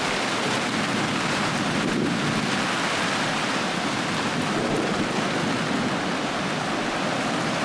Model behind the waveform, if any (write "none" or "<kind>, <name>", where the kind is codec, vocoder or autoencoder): none